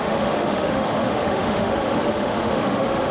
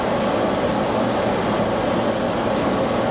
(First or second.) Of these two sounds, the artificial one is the first